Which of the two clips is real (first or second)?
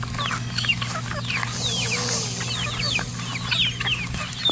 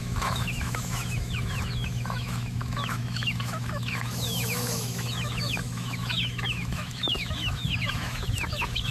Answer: first